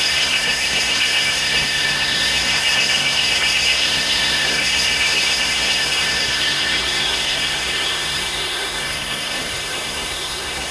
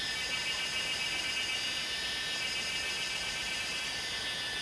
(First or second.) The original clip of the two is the second